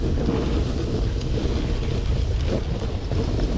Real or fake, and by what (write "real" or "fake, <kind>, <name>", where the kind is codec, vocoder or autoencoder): real